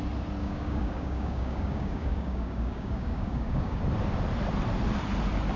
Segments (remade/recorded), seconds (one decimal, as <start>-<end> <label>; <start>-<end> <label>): 0.0-0.4 recorded; 0.4-3.8 remade; 3.8-5.6 recorded